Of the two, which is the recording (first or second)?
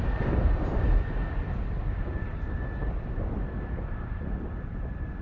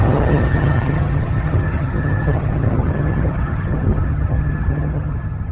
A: first